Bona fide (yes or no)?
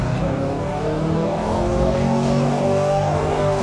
no